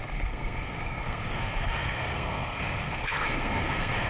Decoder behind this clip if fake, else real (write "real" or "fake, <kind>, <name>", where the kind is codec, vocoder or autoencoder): fake, codec, SNAC